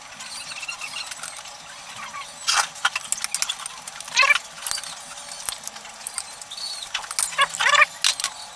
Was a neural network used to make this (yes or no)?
no